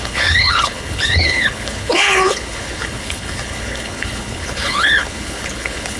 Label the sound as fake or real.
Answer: fake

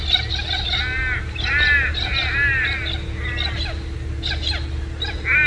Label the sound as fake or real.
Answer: real